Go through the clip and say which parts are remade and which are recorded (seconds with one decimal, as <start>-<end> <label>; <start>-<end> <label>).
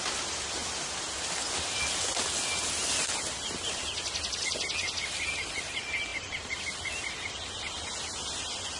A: 0.0-6.1 recorded; 6.1-6.6 remade; 6.6-8.8 recorded